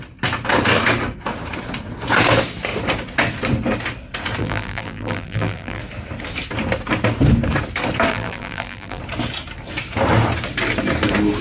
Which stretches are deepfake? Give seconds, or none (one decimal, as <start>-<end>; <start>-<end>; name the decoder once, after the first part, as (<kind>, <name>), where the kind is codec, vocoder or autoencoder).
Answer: 4.4-5.8 (vocoder, BigVGAN v2); 8.1-9.0